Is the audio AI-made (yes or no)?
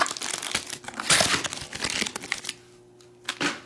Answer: no